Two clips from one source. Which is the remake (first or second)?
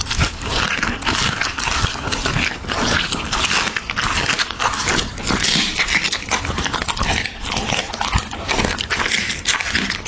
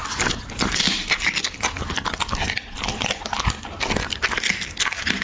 first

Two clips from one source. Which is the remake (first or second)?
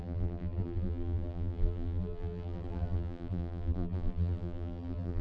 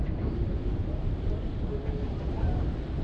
first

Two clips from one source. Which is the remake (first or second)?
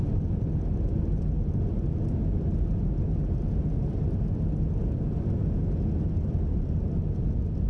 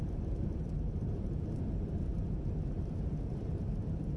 second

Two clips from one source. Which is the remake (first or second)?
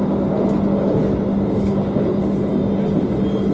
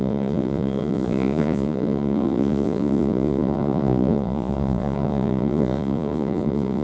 second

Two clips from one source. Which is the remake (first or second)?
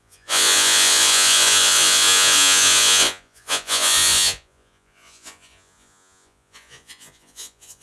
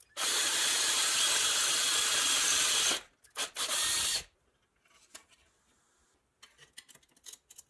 first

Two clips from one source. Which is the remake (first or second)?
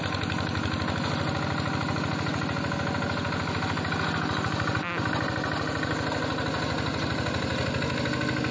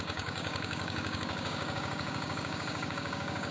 second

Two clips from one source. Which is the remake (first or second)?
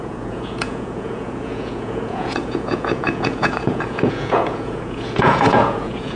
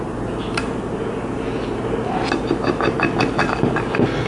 first